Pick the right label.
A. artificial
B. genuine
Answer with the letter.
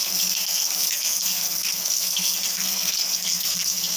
A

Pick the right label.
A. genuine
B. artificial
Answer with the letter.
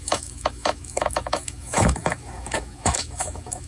B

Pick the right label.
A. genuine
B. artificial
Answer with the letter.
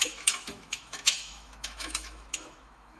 B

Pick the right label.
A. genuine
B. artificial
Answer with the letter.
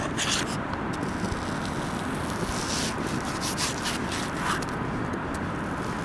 A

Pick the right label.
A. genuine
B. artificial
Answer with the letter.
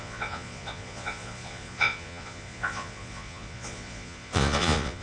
B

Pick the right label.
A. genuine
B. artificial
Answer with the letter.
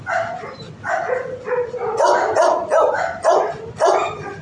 A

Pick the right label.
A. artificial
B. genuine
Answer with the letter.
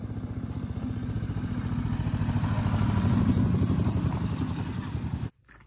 B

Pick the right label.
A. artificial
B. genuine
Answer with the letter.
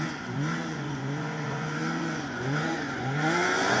A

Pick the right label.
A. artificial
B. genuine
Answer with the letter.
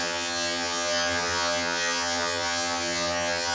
A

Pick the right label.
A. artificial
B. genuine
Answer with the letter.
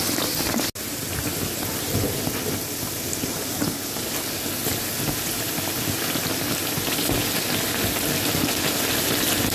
B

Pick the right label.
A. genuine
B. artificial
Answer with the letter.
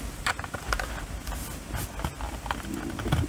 A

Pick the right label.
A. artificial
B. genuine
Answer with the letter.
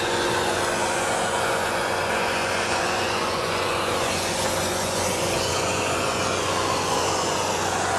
A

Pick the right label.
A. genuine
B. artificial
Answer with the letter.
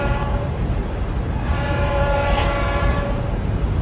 B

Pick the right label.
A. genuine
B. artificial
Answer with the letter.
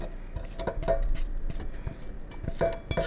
A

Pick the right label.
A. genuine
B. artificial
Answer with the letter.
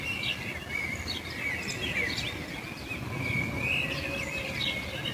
A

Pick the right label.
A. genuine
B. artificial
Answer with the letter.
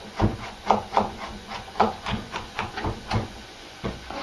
B